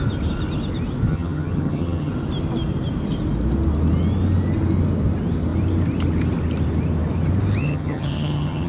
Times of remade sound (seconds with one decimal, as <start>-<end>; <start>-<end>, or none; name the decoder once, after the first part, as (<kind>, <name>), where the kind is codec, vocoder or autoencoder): 1.1-2.1 (vocoder, HiFi-GAN); 7.6-8.7